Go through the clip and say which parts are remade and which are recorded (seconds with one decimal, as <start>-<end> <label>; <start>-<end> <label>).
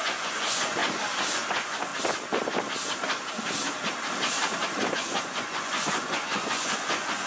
0.0-0.8 remade; 0.8-1.3 recorded; 1.3-1.9 remade; 1.9-4.9 recorded; 4.9-7.3 remade